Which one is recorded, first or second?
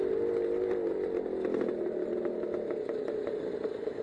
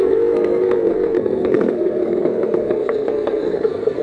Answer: first